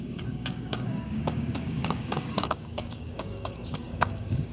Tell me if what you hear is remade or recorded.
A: remade